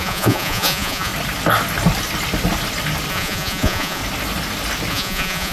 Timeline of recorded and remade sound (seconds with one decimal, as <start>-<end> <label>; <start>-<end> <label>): 0.0-1.1 remade; 1.1-3.1 recorded; 3.1-4.0 remade; 4.0-4.9 recorded; 4.9-5.5 remade